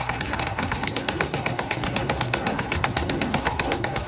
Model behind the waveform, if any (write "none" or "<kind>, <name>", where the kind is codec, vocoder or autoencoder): codec, SNAC